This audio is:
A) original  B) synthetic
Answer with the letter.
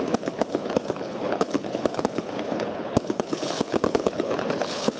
B